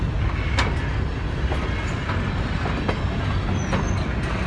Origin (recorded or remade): recorded